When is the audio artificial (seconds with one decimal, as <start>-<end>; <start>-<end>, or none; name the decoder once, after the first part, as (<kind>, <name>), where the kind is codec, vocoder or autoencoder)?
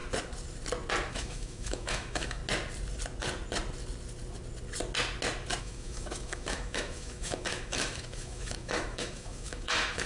1.1-2.4 (autoencoder, DAC-VAE); 5.6-10.1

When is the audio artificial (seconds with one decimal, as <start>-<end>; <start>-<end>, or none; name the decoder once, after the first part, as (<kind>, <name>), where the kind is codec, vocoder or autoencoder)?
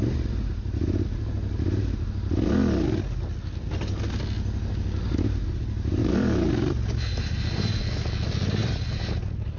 6.0-7.8 (vocoder, BigVGAN v2); 8.6-9.6